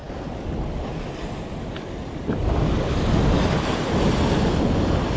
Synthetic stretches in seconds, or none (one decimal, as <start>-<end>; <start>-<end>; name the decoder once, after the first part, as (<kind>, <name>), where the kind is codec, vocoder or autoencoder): none